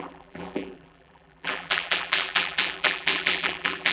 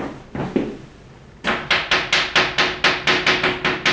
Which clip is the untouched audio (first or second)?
second